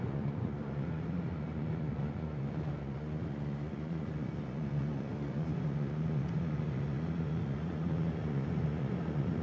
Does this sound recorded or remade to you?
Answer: remade